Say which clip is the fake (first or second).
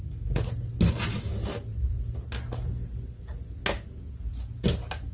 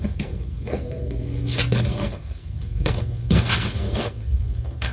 second